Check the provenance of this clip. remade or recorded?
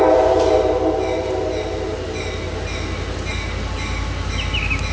recorded